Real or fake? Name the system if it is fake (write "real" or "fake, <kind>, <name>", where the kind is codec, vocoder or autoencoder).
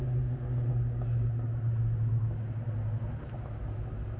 real